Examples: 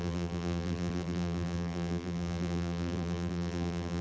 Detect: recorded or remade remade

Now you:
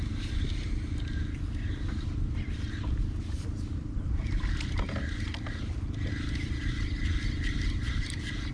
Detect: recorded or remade recorded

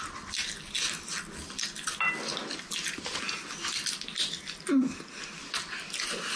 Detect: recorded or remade recorded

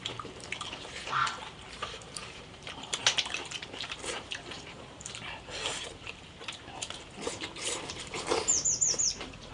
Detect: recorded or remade remade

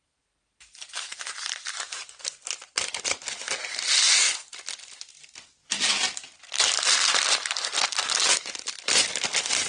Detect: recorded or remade recorded